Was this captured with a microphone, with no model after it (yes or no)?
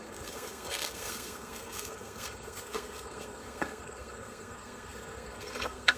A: no